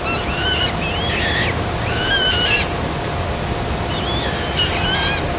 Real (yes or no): yes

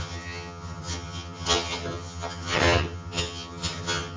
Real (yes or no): no